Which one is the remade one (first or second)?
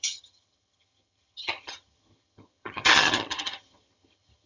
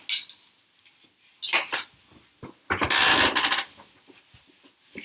first